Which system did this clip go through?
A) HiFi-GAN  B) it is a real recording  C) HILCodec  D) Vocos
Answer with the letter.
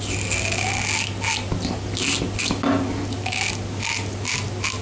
B